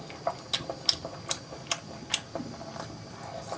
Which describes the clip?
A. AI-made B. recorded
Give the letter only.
B